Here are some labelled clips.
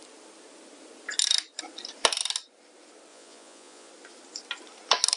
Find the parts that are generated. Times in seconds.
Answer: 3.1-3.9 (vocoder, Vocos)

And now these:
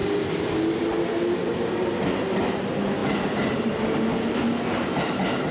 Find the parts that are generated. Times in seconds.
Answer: none

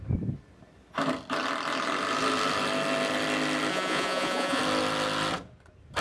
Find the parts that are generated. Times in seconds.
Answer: 3.7-4.6 (vocoder, Vocos)

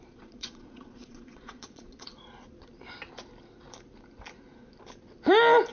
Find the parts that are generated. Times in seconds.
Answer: 0.0-2.1 (vocoder, Vocos)

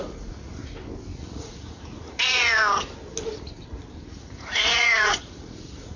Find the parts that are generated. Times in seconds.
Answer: 0.0-0.6 (vocoder, Vocos); 1.2-2.6; 4.2-6.0

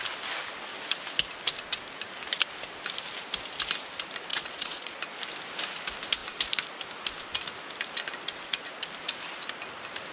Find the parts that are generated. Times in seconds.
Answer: 4.3-5.0 (vocoder, Vocos)

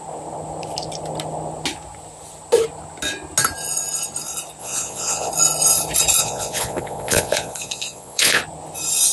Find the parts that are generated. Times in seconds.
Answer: 4.6-5.3 (vocoder, Vocos); 6.2-8.4